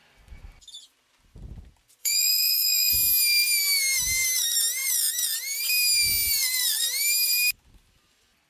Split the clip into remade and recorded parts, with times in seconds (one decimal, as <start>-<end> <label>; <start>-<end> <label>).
0.0-2.0 recorded; 2.0-2.9 remade; 2.9-8.5 recorded